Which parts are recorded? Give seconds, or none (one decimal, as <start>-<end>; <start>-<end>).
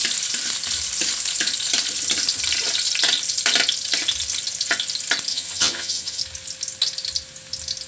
0.0-5.3; 6.2-7.9